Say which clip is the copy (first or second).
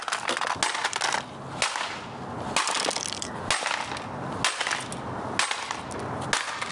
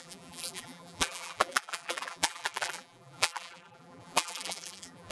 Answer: second